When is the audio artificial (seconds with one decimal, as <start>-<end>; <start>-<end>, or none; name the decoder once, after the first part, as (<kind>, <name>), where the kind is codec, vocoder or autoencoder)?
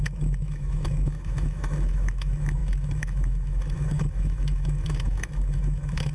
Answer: 0.0-6.1 (autoencoder, DAC-VAE)